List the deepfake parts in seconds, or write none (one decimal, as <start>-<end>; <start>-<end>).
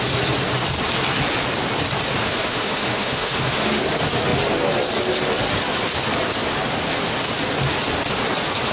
2.2-3.8